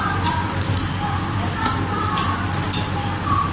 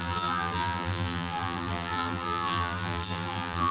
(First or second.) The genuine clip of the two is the first